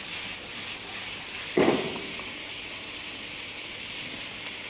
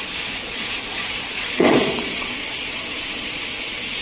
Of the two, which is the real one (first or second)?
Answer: first